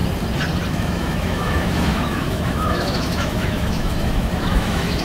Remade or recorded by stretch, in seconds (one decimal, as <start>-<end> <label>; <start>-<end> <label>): 0.0-0.7 recorded; 0.7-5.0 remade

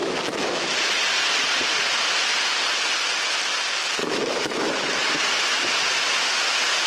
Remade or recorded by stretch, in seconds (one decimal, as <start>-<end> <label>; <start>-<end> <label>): 0.0-0.6 remade; 0.6-4.0 recorded; 4.0-5.1 remade; 5.1-6.9 recorded

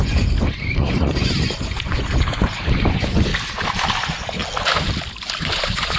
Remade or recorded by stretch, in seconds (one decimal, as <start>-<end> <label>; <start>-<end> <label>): 0.0-3.3 remade; 3.3-4.0 recorded; 4.0-4.4 remade; 4.4-5.4 recorded; 5.4-6.0 remade

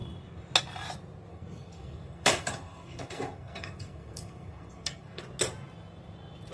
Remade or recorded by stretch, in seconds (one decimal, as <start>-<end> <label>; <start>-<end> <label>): 0.0-1.3 recorded; 1.3-5.2 remade; 5.2-6.5 recorded

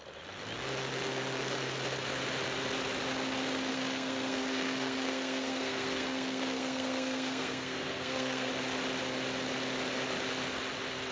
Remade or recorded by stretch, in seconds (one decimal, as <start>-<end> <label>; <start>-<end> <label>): 0.0-3.7 recorded; 3.7-8.5 remade; 8.5-11.1 recorded